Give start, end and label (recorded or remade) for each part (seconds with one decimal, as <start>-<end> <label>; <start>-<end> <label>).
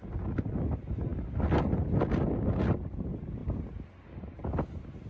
0.0-5.1 recorded